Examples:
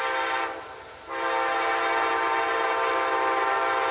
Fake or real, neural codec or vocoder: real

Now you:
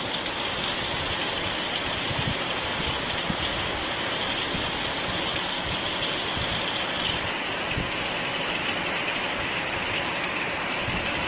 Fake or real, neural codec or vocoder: real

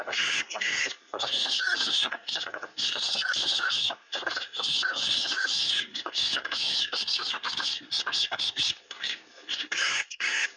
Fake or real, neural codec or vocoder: fake, codec, SNAC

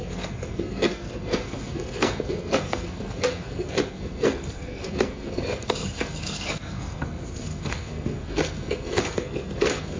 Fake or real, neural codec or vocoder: fake, codec, SNAC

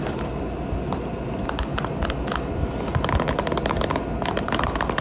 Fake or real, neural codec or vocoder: real